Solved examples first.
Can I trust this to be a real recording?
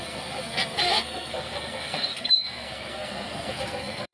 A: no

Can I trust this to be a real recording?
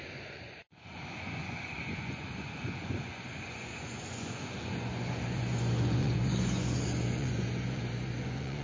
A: no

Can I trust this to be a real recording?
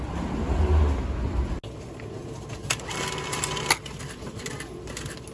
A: yes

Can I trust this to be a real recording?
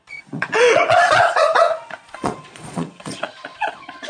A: no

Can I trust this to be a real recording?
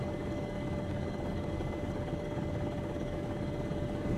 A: no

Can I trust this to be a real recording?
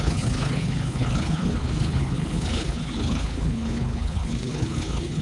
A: no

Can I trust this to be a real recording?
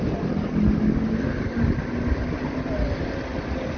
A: yes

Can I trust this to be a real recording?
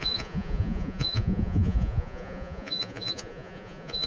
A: no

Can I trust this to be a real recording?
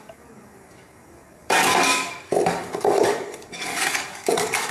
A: no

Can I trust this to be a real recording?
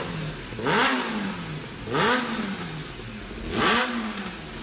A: yes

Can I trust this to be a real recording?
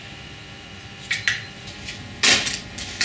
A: yes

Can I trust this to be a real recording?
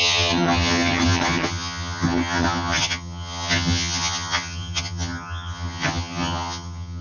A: no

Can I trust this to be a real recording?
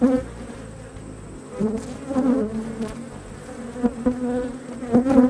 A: yes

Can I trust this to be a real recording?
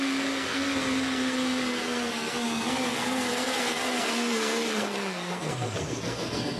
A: no